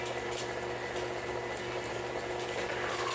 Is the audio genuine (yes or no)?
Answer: yes